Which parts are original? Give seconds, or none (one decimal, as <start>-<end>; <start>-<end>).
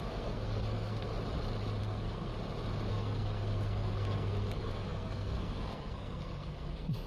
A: 1.1-1.8; 2.3-2.9